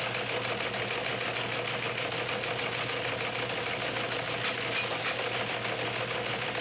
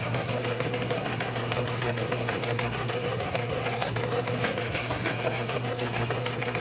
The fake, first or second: second